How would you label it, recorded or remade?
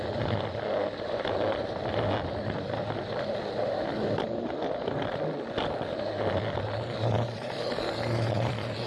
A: recorded